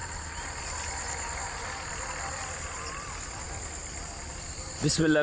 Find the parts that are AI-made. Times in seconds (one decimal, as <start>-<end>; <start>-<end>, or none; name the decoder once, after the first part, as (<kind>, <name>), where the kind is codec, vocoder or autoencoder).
none